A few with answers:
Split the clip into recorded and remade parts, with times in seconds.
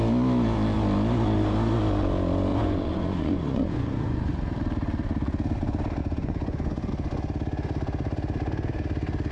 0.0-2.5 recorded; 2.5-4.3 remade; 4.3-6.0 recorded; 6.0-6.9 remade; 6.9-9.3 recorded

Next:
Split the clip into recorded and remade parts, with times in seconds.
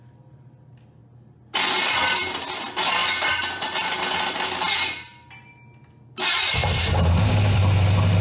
0.0-6.6 recorded; 6.6-7.3 remade; 7.3-8.2 recorded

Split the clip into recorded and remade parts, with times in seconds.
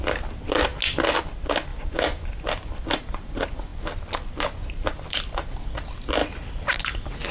0.0-0.7 remade; 0.7-1.2 recorded; 1.2-3.7 remade; 3.7-4.8 recorded; 4.8-6.2 remade; 6.2-7.3 recorded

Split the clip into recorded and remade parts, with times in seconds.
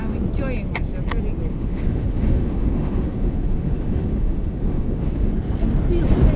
0.0-1.5 recorded; 1.5-5.3 remade; 5.3-6.4 recorded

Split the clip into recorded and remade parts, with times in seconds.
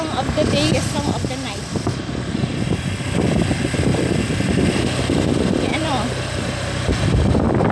0.0-7.7 recorded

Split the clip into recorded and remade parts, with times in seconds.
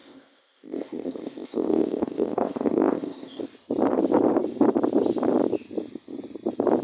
0.0-3.4 remade; 3.4-6.8 recorded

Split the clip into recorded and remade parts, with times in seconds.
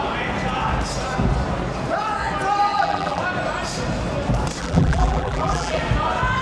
0.0-2.7 recorded; 2.7-3.2 remade; 3.2-4.6 recorded; 4.6-5.8 remade; 5.8-6.4 recorded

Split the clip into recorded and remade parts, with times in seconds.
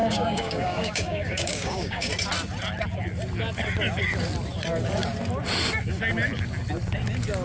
0.0-2.1 remade; 2.1-7.4 recorded